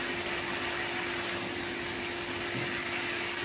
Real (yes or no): yes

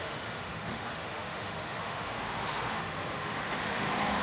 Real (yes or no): no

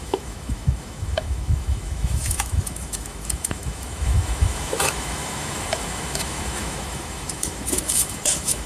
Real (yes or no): no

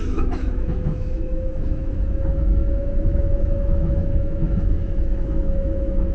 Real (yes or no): no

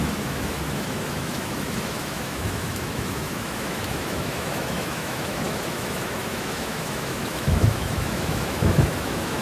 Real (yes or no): no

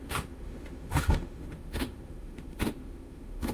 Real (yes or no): no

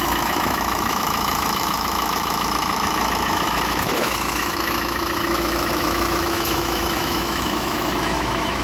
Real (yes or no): no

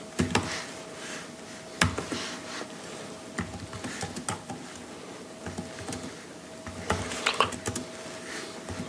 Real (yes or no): yes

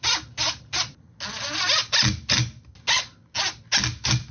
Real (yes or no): yes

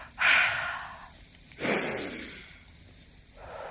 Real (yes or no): yes